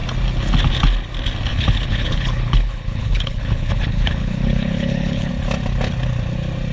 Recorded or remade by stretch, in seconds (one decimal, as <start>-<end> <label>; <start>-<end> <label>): 0.0-1.5 recorded; 1.5-5.3 remade; 5.3-6.7 recorded